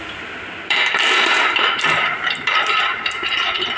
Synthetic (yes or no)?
yes